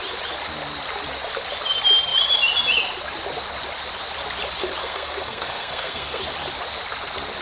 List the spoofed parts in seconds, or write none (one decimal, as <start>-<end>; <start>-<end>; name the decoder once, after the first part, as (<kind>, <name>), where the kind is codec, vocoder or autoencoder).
4.8-6.2 (codec, SNAC)